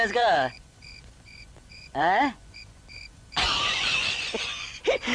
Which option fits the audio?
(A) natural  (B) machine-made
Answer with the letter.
B